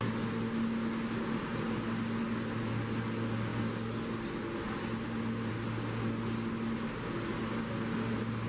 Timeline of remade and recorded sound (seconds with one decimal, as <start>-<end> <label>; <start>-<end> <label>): 0.0-8.5 recorded